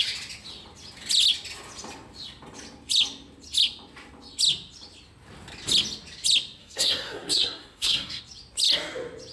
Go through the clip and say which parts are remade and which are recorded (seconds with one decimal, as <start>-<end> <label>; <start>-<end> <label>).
0.0-6.6 recorded; 6.6-8.2 remade; 8.2-9.3 recorded